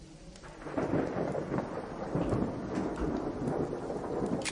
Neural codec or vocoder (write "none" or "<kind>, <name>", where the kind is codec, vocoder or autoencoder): none